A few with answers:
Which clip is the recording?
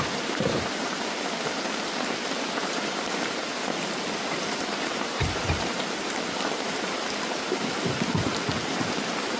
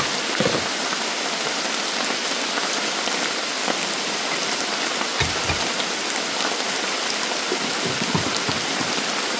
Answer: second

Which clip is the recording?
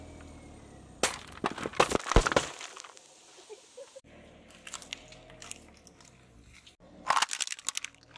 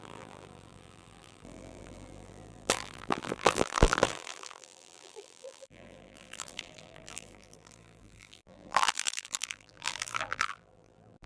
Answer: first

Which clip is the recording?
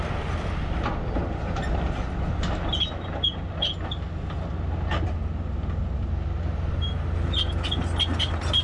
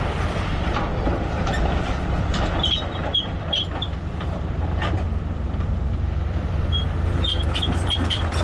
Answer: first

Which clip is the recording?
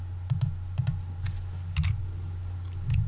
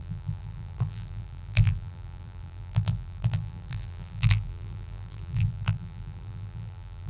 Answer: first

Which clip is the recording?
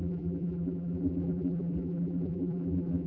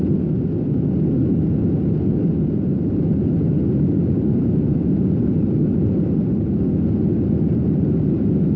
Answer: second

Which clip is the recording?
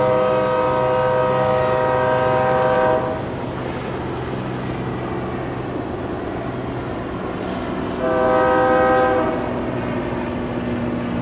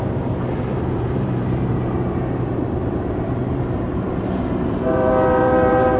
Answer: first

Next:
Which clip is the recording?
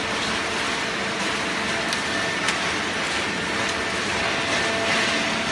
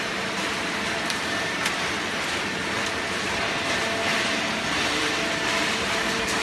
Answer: first